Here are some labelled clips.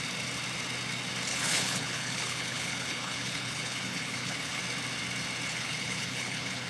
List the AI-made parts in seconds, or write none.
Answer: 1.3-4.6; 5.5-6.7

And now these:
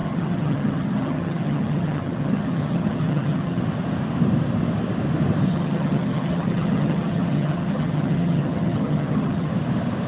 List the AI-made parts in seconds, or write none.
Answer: 0.0-3.6; 5.5-9.5

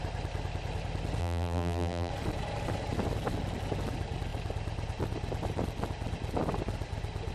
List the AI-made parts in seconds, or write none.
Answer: 1.2-2.1

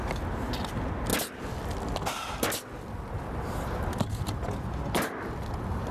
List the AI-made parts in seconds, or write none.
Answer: none

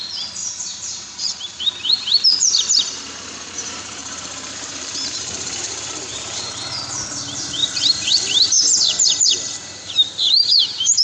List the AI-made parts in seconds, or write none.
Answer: 0.4-1.6; 4.0-6.6; 7.6-10.6

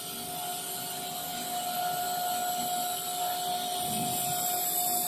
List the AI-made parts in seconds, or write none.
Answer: none

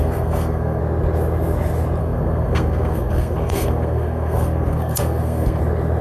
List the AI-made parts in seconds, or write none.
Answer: 0.0-0.8; 2.0-5.6

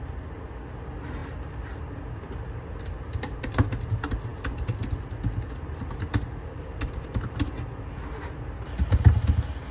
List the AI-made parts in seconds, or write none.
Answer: none